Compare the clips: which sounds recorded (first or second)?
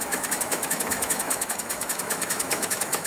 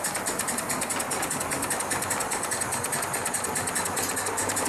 second